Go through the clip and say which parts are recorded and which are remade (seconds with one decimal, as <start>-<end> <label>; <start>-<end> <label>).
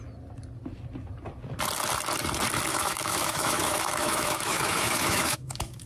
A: 0.0-2.7 recorded; 2.7-5.9 remade